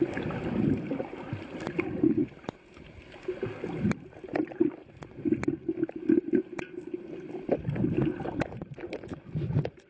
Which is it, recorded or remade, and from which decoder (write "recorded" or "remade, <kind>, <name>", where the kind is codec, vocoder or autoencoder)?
recorded